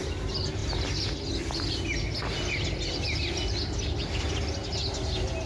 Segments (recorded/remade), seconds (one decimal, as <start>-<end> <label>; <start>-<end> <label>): 0.0-5.5 recorded